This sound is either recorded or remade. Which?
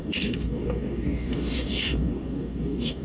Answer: remade